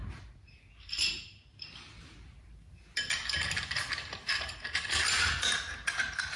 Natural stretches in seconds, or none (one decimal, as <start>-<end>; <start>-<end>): 0.0-6.4

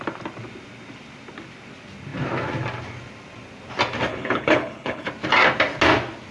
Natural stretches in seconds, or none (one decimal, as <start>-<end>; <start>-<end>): 0.0-4.1; 5.1-6.3

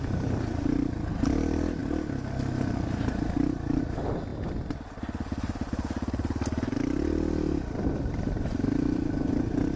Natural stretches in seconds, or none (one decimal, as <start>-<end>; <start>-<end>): 0.0-9.8

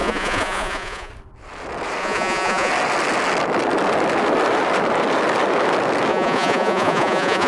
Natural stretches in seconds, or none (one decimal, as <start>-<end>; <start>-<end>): 1.1-2.0; 2.7-6.1

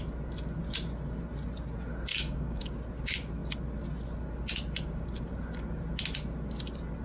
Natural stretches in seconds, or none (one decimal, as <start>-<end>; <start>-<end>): 0.0-2.1; 2.6-7.0

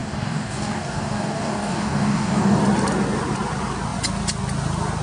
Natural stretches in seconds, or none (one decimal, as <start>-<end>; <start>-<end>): 2.6-5.0

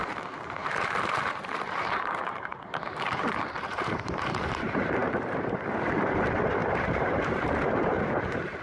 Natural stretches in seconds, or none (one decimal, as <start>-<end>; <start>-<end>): none

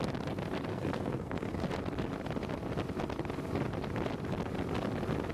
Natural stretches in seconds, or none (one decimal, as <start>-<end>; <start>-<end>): 0.0-0.7; 1.7-5.3